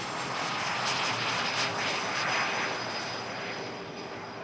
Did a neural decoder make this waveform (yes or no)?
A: no